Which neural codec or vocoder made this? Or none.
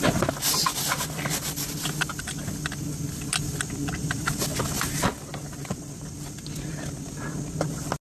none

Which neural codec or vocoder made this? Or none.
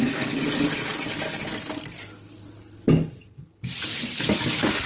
none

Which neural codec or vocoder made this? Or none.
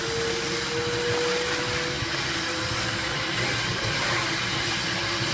none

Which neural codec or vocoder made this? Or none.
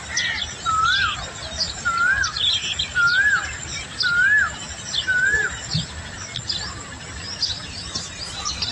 none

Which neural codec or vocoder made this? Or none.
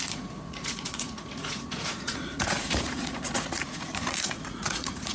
vocoder, Vocos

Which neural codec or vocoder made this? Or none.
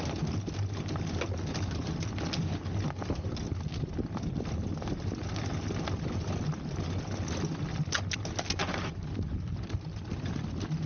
none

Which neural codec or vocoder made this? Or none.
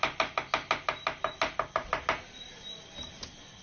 none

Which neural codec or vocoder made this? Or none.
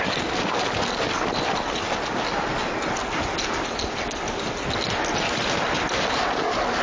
none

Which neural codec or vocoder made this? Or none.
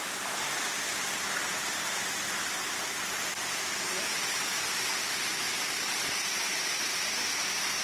none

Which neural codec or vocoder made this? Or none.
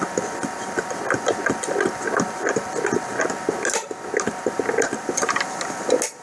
none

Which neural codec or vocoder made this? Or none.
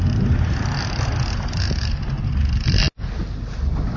none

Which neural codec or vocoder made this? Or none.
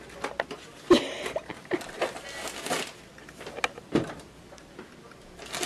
none